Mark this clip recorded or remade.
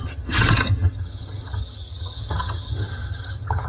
remade